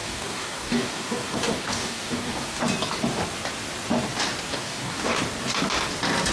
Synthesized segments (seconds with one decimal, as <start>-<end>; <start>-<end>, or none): 0.0-2.6; 4.5-5.2

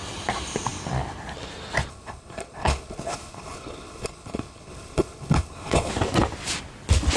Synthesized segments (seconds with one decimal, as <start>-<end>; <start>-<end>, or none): 1.9-5.9

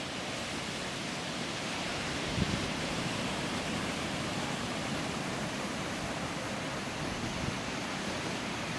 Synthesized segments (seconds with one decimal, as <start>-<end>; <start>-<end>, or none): 1.9-6.3; 7.3-8.8

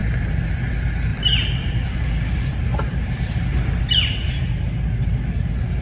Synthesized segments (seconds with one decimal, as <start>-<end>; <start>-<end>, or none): 1.1-4.3

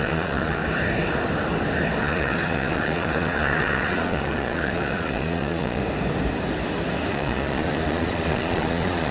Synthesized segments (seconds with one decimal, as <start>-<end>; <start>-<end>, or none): 0.0-0.6; 2.0-5.8; 7.1-9.1